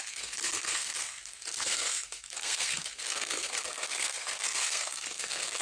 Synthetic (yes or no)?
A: yes